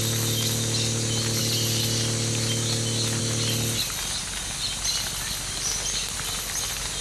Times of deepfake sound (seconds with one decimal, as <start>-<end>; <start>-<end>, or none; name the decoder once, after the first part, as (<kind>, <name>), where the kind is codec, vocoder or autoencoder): none